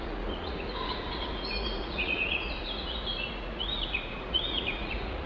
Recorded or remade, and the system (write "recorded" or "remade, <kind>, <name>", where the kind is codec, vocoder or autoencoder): remade, vocoder, Vocos